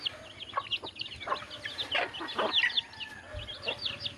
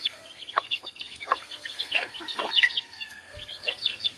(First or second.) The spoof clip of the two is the second